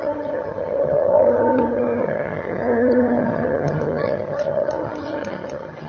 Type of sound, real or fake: fake